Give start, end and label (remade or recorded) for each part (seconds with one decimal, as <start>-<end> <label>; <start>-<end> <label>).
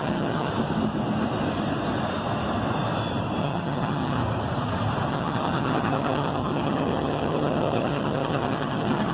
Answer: 0.0-0.5 remade; 0.5-3.4 recorded; 3.4-4.2 remade; 4.2-5.1 recorded; 5.1-9.1 remade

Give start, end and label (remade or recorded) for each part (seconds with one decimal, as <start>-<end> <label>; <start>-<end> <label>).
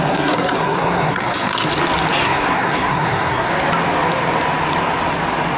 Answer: 0.0-1.7 remade; 1.7-2.2 recorded; 2.2-3.5 remade; 3.5-5.6 recorded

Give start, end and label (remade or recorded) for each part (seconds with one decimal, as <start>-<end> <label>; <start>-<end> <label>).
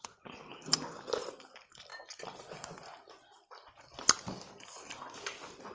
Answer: 0.0-5.7 recorded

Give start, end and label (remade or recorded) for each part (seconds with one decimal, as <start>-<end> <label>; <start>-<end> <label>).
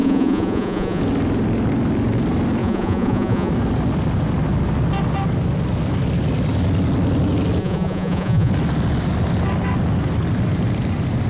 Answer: 0.0-1.0 remade; 1.0-2.6 recorded; 2.6-3.5 remade; 3.5-7.6 recorded; 7.6-8.5 remade; 8.5-11.3 recorded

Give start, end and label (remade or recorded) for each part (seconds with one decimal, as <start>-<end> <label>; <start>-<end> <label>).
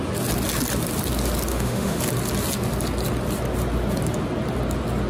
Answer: 0.0-1.5 recorded; 1.5-2.0 remade; 2.0-5.1 recorded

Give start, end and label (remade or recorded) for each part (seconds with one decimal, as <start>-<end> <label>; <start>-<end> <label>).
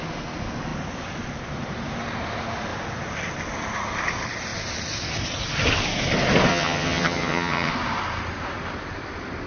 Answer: 0.0-6.5 recorded; 6.5-7.7 remade; 7.7-9.5 recorded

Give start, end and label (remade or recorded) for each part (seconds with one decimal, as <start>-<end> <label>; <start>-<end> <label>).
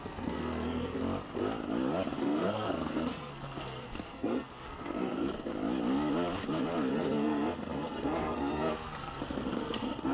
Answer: 0.0-1.0 remade; 1.0-2.2 recorded; 2.2-5.5 remade; 5.5-6.9 recorded; 6.9-10.1 remade